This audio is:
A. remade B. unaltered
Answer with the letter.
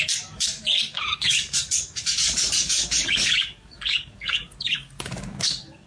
A